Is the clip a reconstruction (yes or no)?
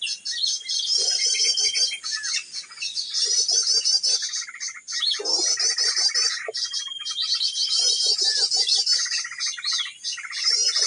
no